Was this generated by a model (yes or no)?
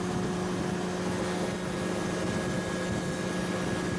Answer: no